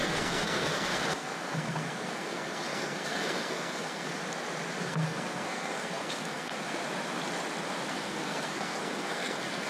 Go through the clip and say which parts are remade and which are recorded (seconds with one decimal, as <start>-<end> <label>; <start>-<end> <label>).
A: 0.0-4.2 remade; 4.2-4.8 recorded; 4.8-6.8 remade; 6.8-7.9 recorded; 7.9-9.7 remade